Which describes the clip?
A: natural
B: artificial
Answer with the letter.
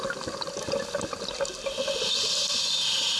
A